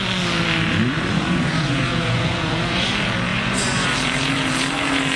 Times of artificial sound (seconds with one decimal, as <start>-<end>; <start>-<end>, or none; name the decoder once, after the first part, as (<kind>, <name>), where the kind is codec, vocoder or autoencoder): 0.8-2.9 (vocoder, Vocos); 3.3-3.9